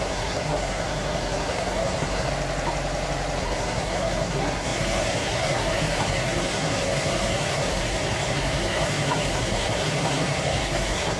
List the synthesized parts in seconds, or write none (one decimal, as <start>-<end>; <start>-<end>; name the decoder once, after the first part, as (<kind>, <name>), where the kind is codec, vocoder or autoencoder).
0.0-2.3 (codec, SNAC); 3.4-11.2